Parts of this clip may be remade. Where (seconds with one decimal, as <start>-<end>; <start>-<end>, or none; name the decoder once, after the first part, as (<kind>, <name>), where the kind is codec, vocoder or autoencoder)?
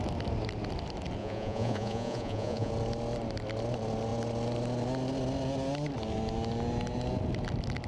1.2-2.7 (vocoder, Vocos)